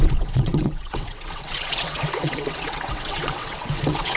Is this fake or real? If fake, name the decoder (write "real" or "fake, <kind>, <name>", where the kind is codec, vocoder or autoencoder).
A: fake, vocoder, WaveNeXt